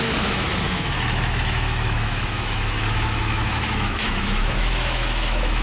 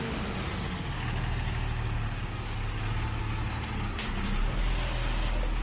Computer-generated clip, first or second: first